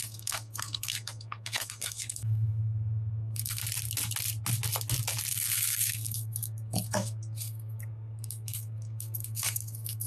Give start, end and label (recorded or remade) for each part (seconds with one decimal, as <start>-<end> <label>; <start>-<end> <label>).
0.0-3.6 remade; 3.6-5.3 recorded; 5.3-10.1 remade

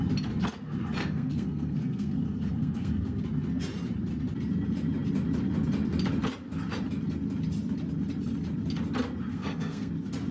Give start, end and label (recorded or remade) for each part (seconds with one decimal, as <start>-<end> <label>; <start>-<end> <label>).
0.0-1.0 recorded; 1.0-3.2 remade; 3.2-9.3 recorded; 9.3-9.9 remade; 9.9-10.3 recorded